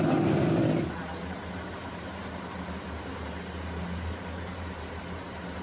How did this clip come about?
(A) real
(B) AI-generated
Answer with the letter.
A